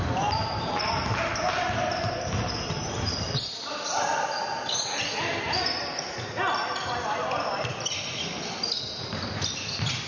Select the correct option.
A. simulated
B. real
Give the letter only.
B